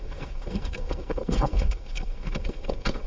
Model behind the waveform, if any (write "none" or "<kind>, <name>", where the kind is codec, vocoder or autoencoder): codec, SNAC